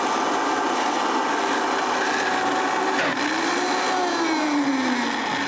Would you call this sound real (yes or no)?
yes